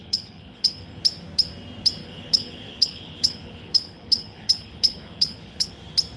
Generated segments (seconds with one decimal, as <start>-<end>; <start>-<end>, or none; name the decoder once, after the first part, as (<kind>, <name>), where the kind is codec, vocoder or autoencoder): 0.0-1.0 (codec, HILCodec); 2.0-5.7